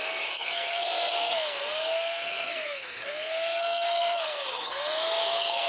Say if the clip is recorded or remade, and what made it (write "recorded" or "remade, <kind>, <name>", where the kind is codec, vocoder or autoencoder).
remade, codec, SNAC